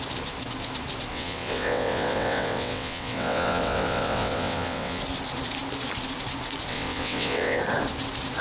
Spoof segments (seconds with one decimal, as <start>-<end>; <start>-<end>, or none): 1.1-5.0; 6.7-7.6